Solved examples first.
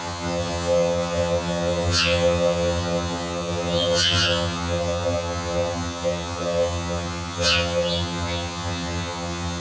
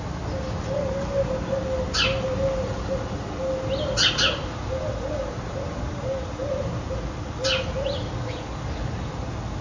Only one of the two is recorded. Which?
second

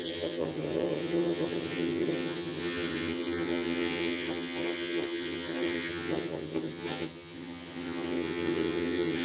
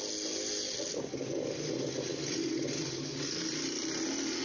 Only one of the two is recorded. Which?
second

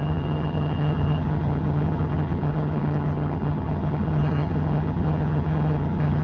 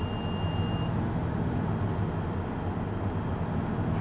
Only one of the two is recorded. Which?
second